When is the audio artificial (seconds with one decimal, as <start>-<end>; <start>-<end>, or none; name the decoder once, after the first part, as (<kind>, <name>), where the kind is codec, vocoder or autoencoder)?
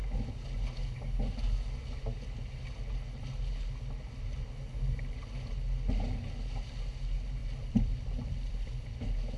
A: 7.4-8.7 (vocoder, BigVGAN v2)